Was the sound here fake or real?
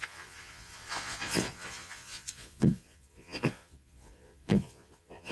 fake